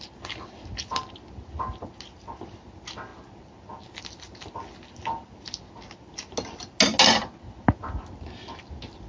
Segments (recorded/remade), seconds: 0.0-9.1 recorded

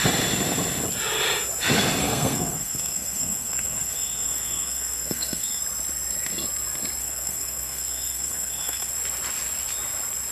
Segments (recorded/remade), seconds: 0.0-2.0 recorded; 2.0-5.6 remade; 5.6-7.0 recorded; 7.0-8.9 remade; 8.9-10.3 recorded

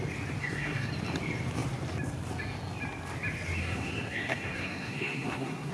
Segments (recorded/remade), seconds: 0.0-0.4 recorded; 0.4-0.9 remade; 0.9-3.6 recorded; 3.6-5.7 remade

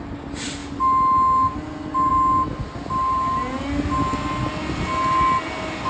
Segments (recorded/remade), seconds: 0.0-5.9 recorded

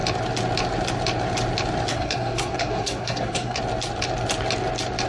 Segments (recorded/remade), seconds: 0.0-1.9 recorded; 1.9-3.6 remade; 3.6-5.1 recorded

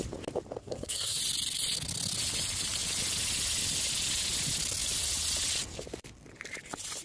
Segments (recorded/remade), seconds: 0.0-0.6 recorded; 0.6-1.2 remade; 1.2-7.0 recorded

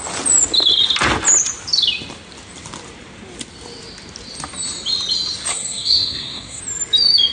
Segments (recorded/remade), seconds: 0.0-5.5 recorded; 5.5-6.6 remade; 6.6-7.3 recorded

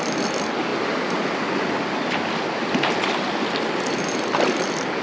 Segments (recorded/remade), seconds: 0.0-5.0 recorded